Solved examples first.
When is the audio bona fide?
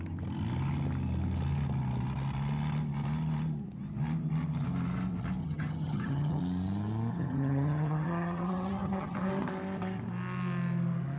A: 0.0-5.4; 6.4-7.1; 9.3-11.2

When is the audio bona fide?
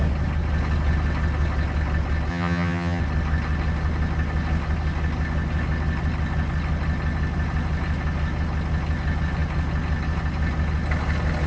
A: 0.0-2.3; 3.0-11.5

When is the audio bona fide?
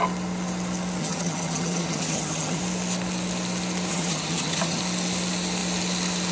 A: 0.0-1.0; 2.6-3.9; 4.8-6.3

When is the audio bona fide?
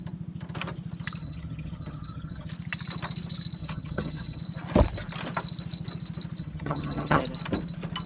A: 0.0-1.2; 2.5-3.6; 4.4-6.4; 7.2-8.1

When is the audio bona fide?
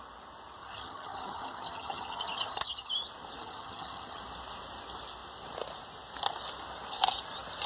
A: 0.0-0.6; 2.9-3.4; 4.2-7.7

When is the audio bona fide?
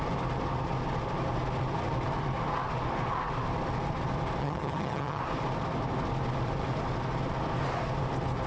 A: 0.0-4.4; 5.2-8.5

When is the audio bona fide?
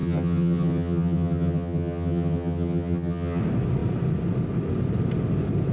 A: 3.4-5.7